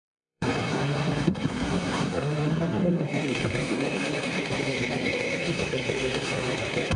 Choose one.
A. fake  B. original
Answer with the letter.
A